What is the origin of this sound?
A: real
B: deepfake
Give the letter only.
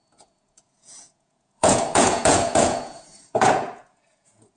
B